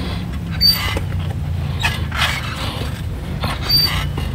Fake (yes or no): yes